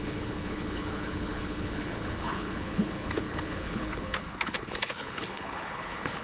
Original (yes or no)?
no